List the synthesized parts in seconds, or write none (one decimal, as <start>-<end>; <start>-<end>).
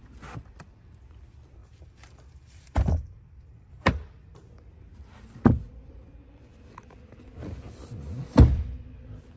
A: 1.6-4.5